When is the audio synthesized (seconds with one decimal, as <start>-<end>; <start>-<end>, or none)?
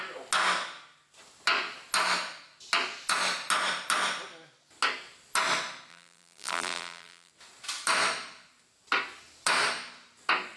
5.9-7.3